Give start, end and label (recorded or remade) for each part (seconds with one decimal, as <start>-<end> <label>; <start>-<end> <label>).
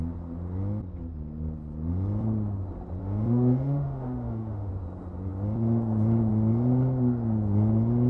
0.0-3.0 recorded; 3.0-4.7 remade; 4.7-8.1 recorded